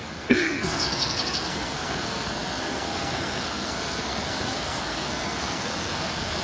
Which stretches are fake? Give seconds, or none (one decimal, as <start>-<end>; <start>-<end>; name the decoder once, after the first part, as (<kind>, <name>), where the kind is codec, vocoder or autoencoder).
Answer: 0.0-6.4 (codec, SNAC)